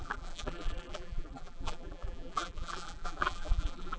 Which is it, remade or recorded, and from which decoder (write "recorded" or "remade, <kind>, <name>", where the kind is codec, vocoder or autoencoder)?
remade, vocoder, BigVGAN v2